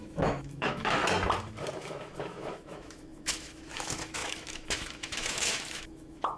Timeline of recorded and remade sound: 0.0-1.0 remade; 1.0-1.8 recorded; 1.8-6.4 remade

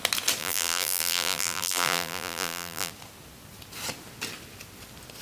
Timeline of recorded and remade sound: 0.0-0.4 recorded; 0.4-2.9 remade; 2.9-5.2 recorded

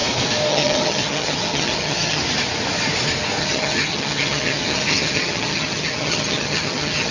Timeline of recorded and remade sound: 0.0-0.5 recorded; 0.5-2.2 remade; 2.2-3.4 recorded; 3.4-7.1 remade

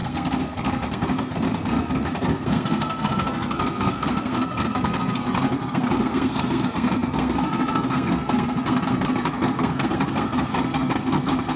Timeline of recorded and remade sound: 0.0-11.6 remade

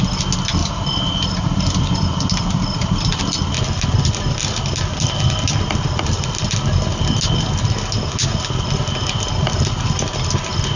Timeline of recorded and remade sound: 0.0-0.6 recorded; 0.6-3.2 remade; 3.2-10.8 recorded

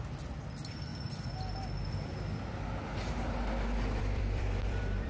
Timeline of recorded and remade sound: 0.0-0.9 remade; 0.9-4.0 recorded; 4.0-5.1 remade